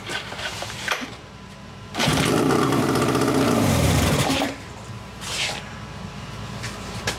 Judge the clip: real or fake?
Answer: fake